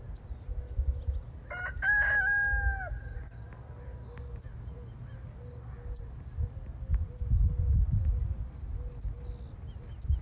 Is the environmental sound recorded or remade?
recorded